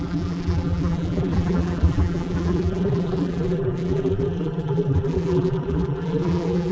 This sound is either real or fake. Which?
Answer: fake